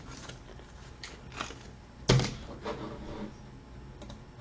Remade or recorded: recorded